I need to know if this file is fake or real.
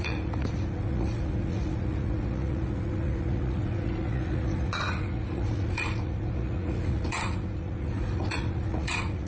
fake